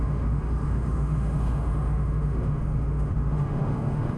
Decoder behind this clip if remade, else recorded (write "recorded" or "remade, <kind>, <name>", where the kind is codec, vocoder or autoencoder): remade, autoencoder, DAC-VAE